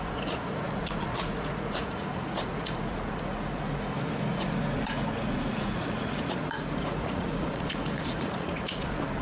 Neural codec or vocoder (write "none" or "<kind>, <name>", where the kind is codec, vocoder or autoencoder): vocoder, Vocos